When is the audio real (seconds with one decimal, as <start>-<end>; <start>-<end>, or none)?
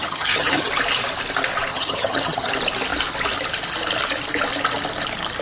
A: 0.7-1.7; 2.5-5.4